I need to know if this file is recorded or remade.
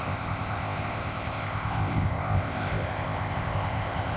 remade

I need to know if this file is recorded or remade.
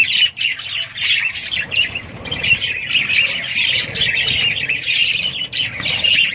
recorded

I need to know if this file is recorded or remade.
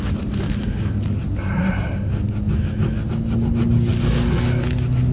recorded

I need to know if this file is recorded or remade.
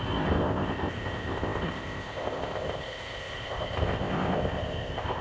remade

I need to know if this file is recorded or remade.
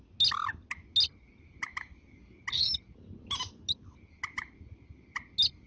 recorded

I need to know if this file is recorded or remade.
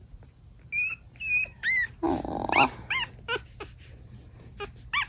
recorded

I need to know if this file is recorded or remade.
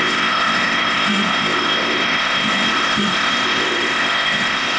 remade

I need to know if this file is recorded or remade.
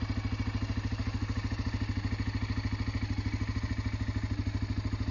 recorded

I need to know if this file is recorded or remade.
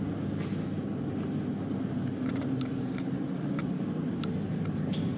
recorded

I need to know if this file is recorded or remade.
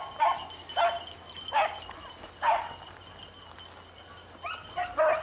recorded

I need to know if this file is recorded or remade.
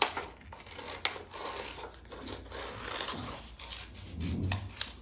recorded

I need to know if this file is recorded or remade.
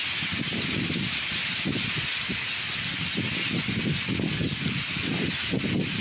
recorded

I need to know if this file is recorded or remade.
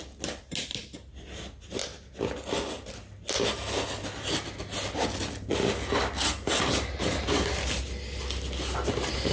recorded